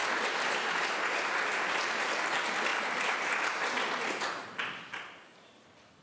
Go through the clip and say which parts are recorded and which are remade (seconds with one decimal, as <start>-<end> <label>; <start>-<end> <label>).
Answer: 0.0-1.5 recorded; 1.5-6.0 remade